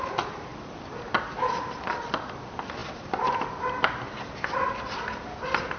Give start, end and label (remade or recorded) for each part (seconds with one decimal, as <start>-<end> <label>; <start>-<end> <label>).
0.0-5.8 recorded